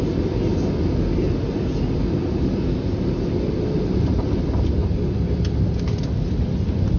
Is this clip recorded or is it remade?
recorded